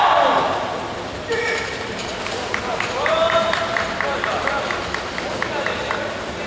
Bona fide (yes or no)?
no